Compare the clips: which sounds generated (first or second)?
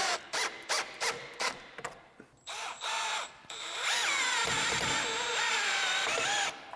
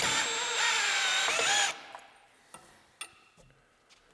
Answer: first